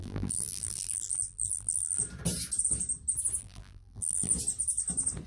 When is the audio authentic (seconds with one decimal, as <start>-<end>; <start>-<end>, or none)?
2.0-3.4; 4.3-5.3